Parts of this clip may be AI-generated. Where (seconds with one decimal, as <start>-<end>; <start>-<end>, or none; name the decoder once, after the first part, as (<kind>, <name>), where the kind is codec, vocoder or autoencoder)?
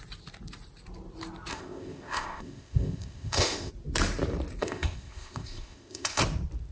1.5-3.7 (codec, ZipCodec); 4.6-6.2